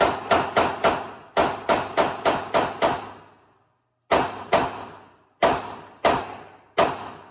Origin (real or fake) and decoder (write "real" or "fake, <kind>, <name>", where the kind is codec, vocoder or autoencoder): real